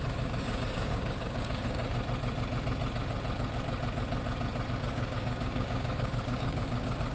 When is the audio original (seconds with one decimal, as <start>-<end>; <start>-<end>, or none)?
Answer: 1.8-4.7

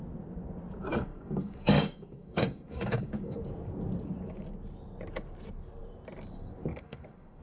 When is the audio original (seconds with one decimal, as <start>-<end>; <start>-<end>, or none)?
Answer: 0.0-0.9; 3.4-6.7

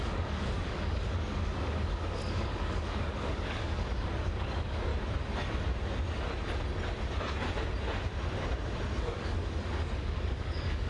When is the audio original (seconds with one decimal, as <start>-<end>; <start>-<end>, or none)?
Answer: 4.9-9.0